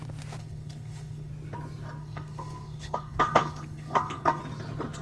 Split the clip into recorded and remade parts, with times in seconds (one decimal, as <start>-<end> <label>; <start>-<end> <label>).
0.0-0.4 recorded; 0.4-1.3 remade; 1.3-2.0 recorded; 2.0-4.4 remade; 4.4-5.0 recorded